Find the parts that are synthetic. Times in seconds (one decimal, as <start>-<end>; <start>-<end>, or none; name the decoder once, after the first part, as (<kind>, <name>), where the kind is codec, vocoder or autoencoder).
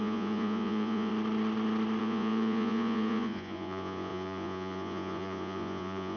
0.0-1.1 (vocoder, Vocos); 2.0-6.2